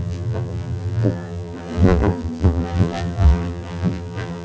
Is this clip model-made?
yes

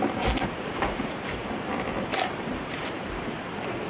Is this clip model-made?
no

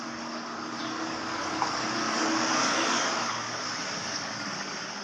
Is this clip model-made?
yes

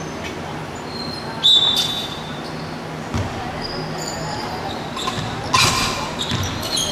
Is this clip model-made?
no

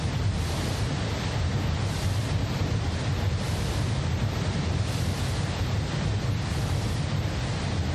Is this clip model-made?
no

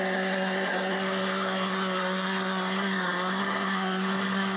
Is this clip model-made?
yes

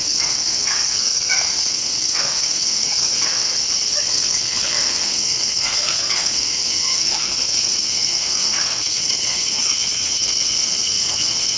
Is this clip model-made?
yes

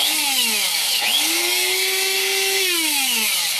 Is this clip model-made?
yes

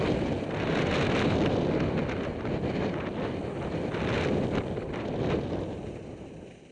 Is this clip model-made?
no